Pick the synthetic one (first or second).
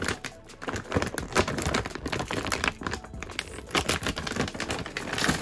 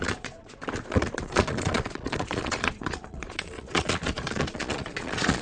second